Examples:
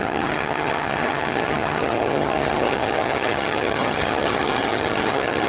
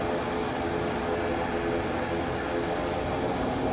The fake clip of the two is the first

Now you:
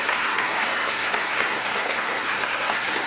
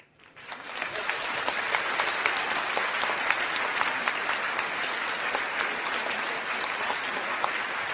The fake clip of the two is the first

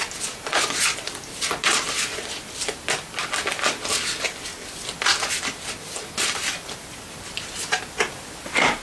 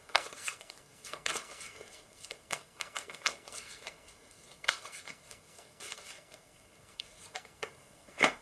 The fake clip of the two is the second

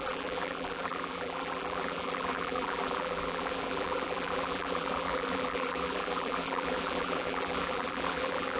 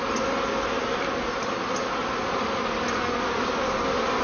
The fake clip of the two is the first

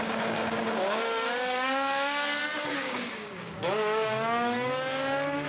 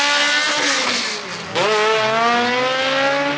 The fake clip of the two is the first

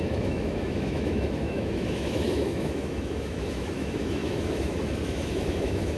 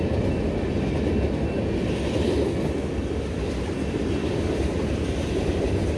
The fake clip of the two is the first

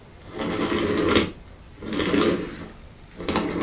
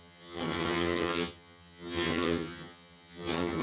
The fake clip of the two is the second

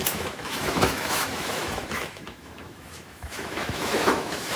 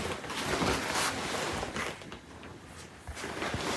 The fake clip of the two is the first